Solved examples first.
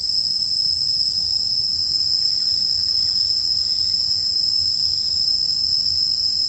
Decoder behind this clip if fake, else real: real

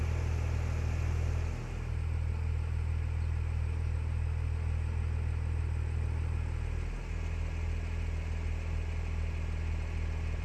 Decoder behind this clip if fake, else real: real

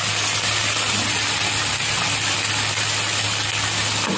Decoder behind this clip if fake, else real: real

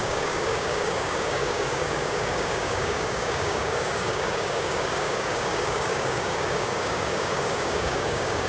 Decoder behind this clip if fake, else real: fake, codec, DAC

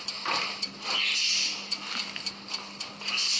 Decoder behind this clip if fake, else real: real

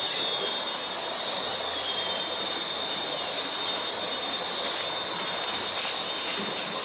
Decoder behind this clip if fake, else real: real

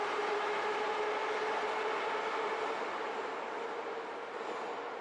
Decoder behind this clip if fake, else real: real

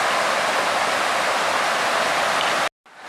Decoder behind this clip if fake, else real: real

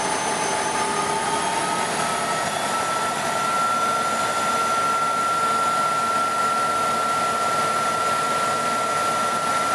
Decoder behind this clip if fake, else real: real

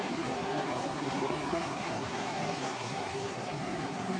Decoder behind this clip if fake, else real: fake, codec, SNAC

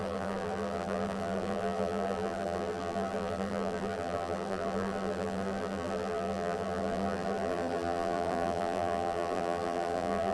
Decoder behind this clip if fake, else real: fake, vocoder, BigVGAN v2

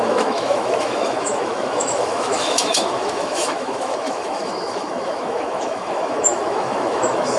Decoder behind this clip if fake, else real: fake, autoencoder, DAC-VAE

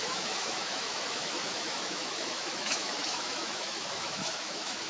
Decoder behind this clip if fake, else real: fake, autoencoder, DAC-VAE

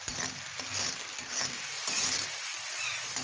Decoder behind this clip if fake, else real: real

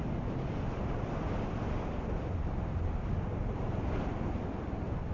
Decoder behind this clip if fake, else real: real